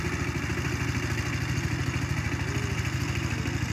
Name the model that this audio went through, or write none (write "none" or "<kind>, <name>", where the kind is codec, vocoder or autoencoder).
none